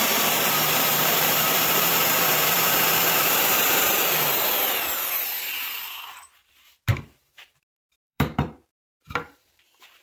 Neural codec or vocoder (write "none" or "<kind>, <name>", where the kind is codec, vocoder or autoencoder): vocoder, BigVGAN v2